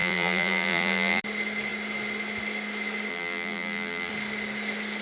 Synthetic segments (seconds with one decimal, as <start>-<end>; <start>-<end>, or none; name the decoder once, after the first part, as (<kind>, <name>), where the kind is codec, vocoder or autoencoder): 0.0-1.2 (vocoder, BigVGAN v2); 3.1-4.1